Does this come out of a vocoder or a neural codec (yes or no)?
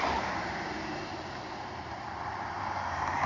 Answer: yes